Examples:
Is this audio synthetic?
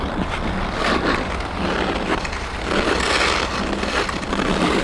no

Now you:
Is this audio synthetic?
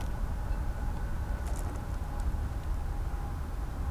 no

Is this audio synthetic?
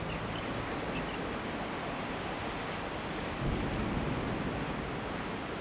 no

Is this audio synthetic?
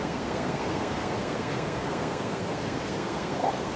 yes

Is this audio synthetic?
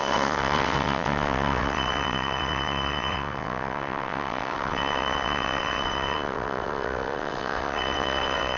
yes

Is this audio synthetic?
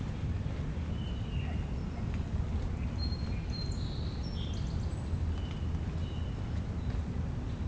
no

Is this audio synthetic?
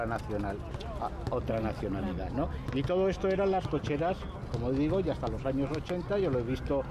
no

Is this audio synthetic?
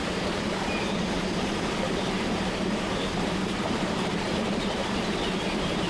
yes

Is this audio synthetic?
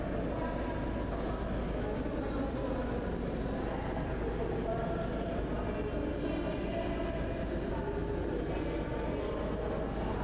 no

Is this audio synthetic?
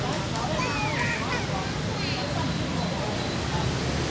no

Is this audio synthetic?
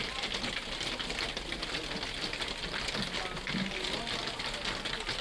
no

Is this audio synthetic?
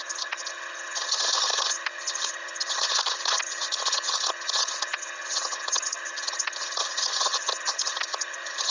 yes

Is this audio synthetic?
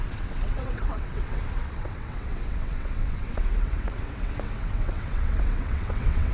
yes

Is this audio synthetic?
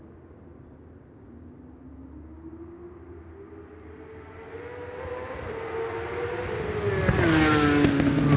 no